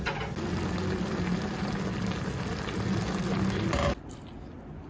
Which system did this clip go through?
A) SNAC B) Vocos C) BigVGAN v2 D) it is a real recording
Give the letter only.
D